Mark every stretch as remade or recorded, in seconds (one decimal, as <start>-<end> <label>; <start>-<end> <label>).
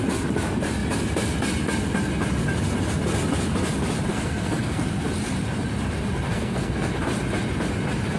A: 0.0-4.1 recorded; 4.1-5.0 remade; 5.0-6.3 recorded; 6.3-6.9 remade; 6.9-8.2 recorded